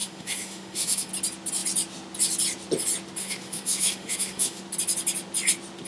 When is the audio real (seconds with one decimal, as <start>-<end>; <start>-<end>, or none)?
1.1-3.2; 4.6-5.9